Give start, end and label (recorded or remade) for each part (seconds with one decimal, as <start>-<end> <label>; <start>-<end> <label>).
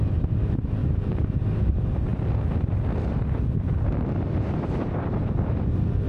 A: 0.0-0.8 recorded; 0.8-1.7 remade; 1.7-6.1 recorded